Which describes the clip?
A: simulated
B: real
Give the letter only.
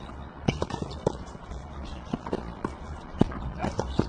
A